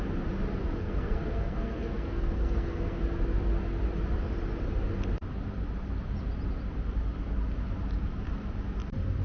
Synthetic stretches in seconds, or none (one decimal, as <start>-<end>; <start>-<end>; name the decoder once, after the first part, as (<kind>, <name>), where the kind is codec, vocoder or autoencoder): 0.6-3.0 (codec, SNAC)